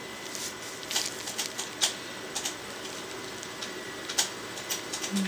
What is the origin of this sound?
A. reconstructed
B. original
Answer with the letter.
B